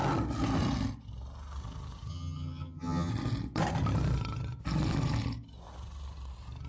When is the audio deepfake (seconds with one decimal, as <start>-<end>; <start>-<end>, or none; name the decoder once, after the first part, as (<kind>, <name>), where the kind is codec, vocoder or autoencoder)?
2.1-3.1 (vocoder, HiFi-GAN)